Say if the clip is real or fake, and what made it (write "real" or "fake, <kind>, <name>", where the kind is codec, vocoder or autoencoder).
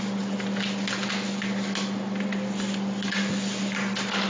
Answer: real